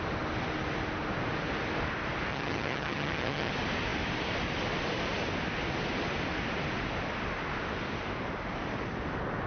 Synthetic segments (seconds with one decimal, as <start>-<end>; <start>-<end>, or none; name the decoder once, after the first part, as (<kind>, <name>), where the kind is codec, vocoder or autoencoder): 2.3-3.5 (vocoder, HiFi-GAN)